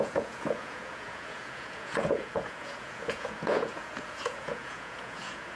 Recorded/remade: remade